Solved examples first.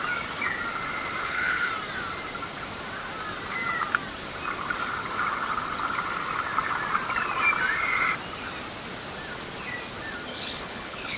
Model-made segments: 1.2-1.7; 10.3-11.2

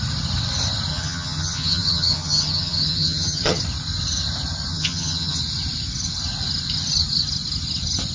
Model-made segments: 0.9-3.6; 4.7-5.4

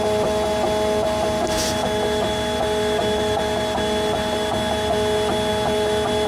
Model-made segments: none

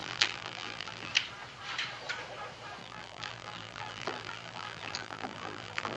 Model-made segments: 0.0-1.1; 2.8-6.0

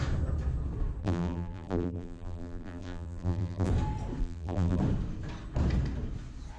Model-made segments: 1.0-3.7; 4.2-4.8